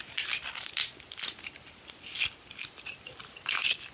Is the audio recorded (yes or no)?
yes